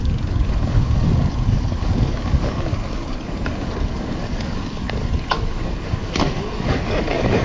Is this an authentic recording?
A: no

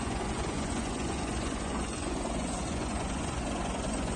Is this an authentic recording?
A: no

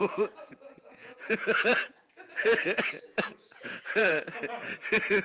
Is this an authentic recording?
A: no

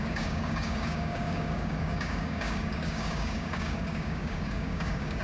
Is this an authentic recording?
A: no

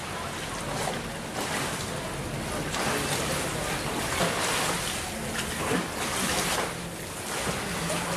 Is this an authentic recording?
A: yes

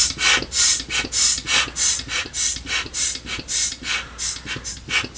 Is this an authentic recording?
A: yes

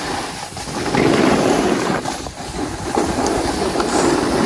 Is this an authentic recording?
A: yes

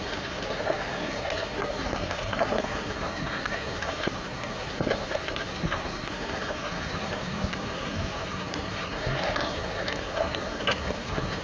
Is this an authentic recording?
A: no